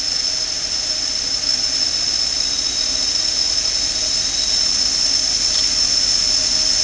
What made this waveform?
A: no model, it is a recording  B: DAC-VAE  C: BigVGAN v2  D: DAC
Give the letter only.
A